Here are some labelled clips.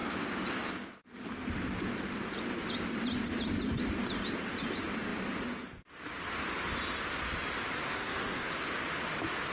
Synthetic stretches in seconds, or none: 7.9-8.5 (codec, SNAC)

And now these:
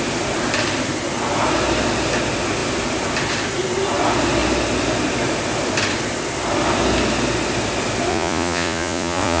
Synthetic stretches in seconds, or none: 8.1-9.4 (vocoder, Vocos)

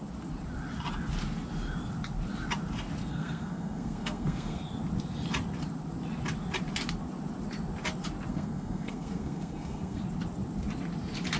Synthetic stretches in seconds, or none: 3.1-4.6 (codec, SNAC); 8.3-10.0